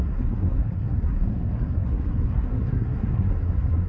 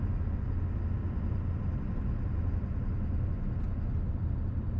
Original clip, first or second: second